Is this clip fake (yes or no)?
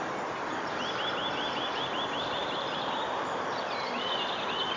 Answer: yes